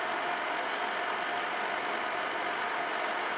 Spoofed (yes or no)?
no